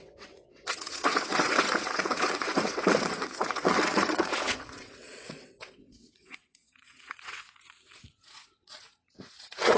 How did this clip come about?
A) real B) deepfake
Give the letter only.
B